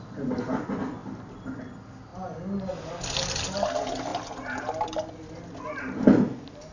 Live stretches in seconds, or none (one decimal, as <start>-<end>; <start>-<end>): 0.0-6.7

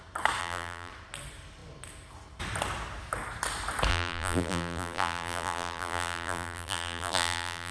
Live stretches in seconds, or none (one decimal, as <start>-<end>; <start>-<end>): 0.0-0.4; 0.9-3.9